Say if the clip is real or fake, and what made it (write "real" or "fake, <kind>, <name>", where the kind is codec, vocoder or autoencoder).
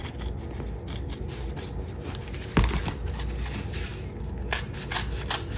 real